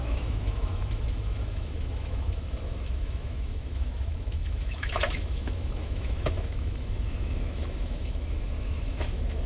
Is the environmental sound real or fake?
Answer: fake